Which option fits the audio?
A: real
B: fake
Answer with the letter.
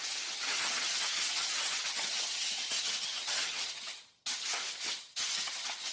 B